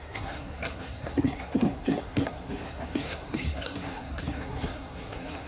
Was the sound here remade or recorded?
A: remade